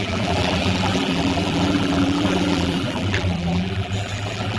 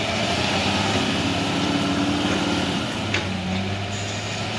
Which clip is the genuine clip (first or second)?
second